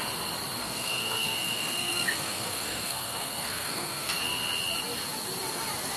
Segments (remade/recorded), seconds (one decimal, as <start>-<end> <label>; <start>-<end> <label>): 0.0-0.6 recorded; 0.6-4.2 remade; 4.2-6.0 recorded